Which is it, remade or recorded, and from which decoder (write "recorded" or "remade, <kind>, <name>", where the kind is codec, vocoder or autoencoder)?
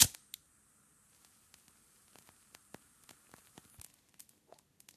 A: recorded